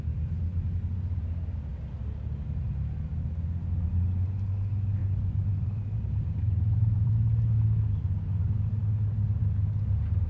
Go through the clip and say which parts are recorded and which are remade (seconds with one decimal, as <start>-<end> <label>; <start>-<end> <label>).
0.0-5.0 recorded; 5.0-7.1 remade; 7.1-10.3 recorded